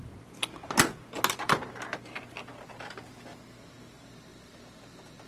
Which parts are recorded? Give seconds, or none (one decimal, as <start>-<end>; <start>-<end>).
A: 0.0-4.3; 4.8-5.3